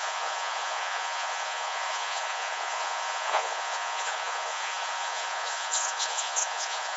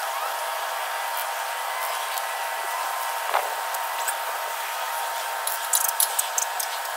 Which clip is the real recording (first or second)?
second